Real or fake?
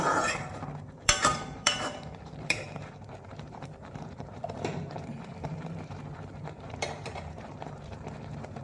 fake